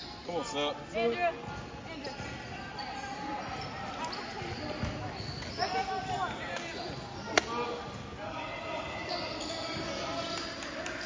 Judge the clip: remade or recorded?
recorded